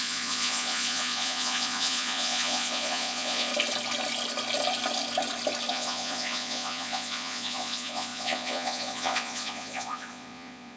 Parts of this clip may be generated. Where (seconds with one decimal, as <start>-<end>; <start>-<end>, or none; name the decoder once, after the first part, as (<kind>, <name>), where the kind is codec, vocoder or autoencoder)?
0.0-3.5 (vocoder, Vocos); 5.7-10.8